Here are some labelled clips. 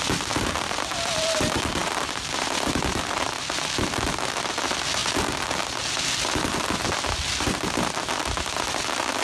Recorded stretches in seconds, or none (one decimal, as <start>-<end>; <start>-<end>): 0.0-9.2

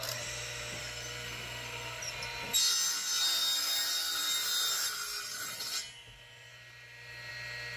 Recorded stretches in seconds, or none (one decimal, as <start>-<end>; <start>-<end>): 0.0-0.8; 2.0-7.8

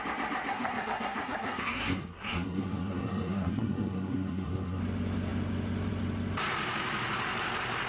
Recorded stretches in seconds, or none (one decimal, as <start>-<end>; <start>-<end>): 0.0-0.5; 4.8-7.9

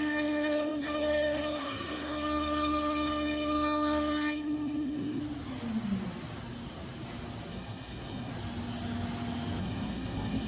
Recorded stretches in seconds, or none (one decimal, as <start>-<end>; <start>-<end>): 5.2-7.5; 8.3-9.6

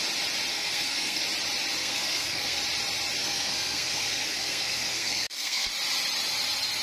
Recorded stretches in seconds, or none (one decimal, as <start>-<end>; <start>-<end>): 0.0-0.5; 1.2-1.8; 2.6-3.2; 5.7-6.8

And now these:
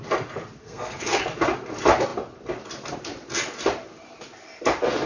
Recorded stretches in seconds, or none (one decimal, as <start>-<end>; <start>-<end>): 0.0-0.6; 1.2-5.1

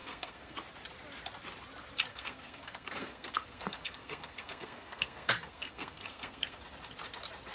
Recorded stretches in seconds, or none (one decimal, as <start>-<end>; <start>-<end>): 0.6-2.1; 6.6-7.5